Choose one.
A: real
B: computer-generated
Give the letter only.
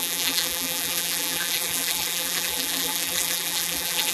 B